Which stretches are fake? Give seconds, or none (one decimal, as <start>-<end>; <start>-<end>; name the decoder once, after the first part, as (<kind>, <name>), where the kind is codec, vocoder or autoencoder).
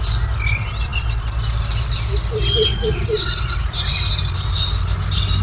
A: none